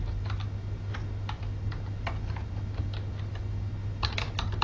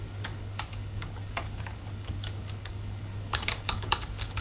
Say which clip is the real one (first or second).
first